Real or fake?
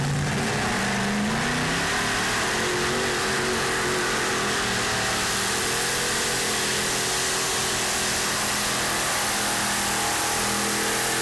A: real